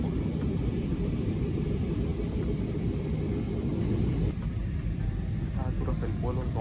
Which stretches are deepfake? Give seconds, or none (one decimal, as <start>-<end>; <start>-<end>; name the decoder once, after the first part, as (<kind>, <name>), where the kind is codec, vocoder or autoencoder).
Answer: 0.0-3.3 (vocoder, BigVGAN v2); 5.9-6.6